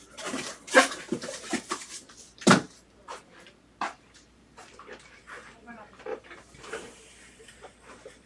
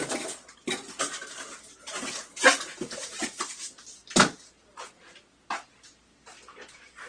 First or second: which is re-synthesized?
first